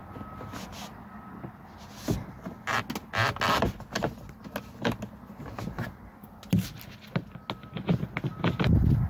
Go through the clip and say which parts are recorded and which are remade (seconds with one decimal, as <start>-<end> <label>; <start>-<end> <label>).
0.0-9.1 recorded